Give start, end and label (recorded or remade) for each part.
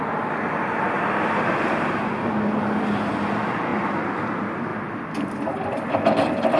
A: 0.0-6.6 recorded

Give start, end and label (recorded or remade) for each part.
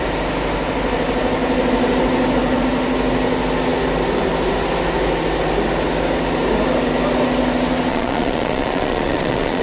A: 0.0-7.9 recorded; 7.9-9.6 remade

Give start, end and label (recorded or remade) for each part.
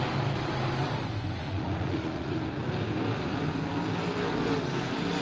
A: 0.0-1.4 recorded; 1.4-2.4 remade; 2.4-5.2 recorded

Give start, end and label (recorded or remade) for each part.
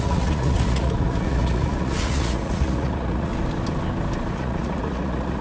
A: 0.0-3.3 remade; 3.3-4.3 recorded; 4.3-5.4 remade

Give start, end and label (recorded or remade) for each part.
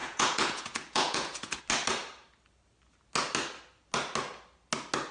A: 0.0-1.6 remade; 1.6-5.1 recorded